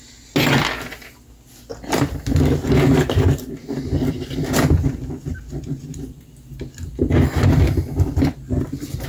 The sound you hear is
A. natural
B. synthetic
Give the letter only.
A